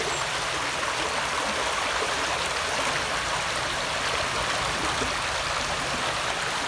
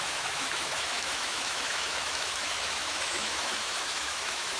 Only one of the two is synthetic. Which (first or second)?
second